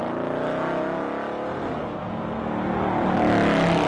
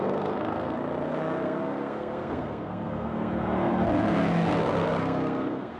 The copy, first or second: second